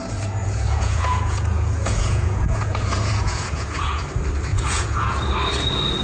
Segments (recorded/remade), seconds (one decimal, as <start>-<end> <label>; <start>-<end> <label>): 0.0-0.4 recorded; 0.4-4.0 remade; 4.0-4.5 recorded; 4.5-5.1 remade; 5.1-6.0 recorded